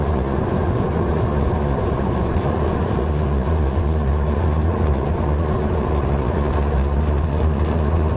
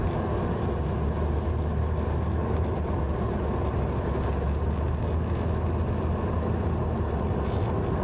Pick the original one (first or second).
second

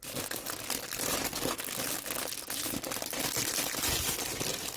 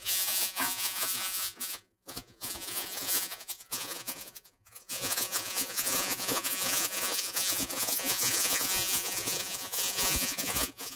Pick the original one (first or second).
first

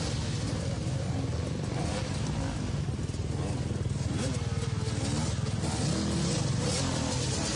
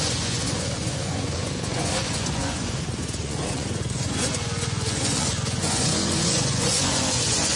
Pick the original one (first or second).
first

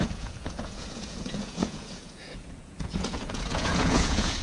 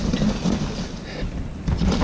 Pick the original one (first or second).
second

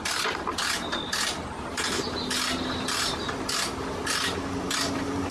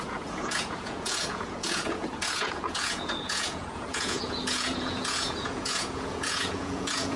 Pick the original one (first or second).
first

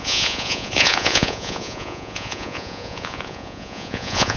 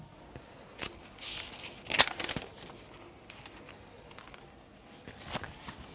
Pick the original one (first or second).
second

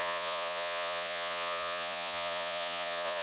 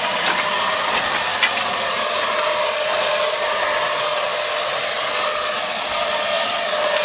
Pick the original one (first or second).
second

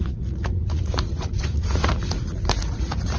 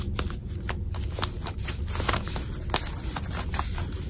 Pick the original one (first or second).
second